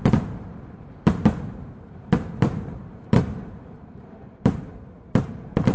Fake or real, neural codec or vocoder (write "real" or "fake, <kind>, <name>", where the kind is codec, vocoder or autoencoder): fake, vocoder, BigVGAN v2